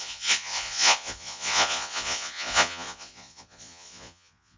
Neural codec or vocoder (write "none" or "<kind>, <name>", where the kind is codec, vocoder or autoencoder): vocoder, Vocos